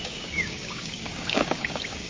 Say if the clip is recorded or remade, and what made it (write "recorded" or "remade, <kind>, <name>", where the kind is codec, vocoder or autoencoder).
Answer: remade, codec, DAC